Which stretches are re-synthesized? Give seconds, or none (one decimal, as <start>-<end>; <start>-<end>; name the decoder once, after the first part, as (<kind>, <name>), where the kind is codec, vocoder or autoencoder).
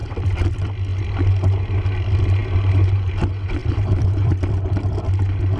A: 0.0-0.5 (vocoder, BigVGAN v2); 3.6-4.3